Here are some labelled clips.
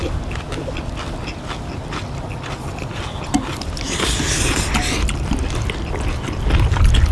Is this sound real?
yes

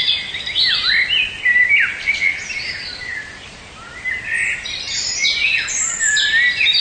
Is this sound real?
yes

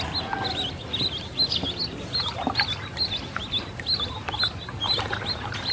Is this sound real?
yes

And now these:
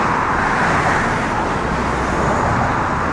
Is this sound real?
yes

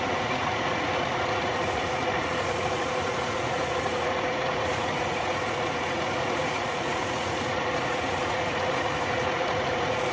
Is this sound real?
no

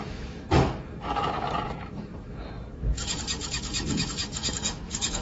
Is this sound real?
no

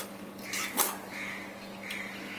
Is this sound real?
yes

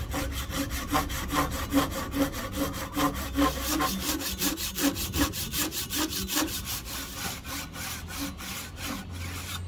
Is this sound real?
yes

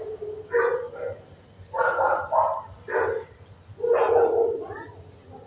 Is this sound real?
yes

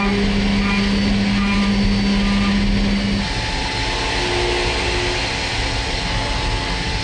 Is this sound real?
yes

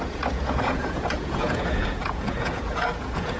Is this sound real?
no